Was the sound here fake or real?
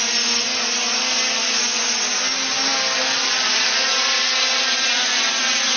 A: real